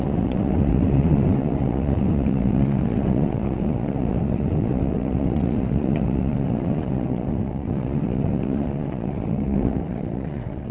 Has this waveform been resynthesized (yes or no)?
yes